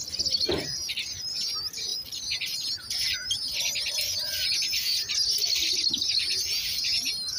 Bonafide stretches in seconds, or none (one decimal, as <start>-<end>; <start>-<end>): 0.0-7.4